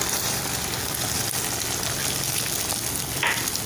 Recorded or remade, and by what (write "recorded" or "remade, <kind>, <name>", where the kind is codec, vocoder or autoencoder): recorded